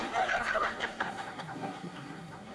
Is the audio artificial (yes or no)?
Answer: yes